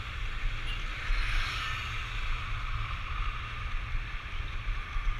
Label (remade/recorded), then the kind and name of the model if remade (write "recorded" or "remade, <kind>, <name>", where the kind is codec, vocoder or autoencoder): recorded